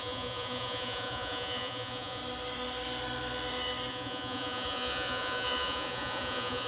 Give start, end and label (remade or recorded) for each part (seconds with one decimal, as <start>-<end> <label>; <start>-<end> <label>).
0.0-2.2 remade; 2.2-3.9 recorded; 3.9-6.7 remade